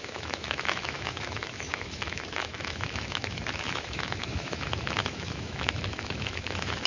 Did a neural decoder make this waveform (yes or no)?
yes